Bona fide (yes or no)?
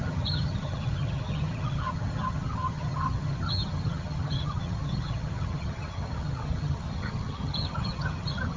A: no